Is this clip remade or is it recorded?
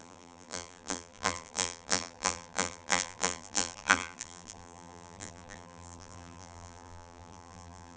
remade